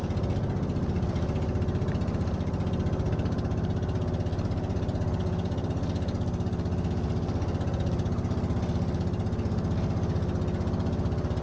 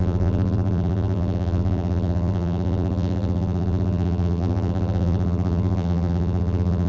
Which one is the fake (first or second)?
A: second